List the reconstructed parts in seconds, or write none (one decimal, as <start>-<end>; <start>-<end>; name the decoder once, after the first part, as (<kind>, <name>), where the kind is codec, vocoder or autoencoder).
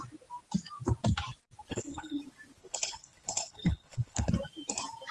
1.7-2.2 (codec, HILCodec); 2.6-4.3